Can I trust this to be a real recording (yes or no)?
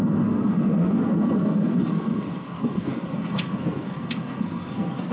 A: no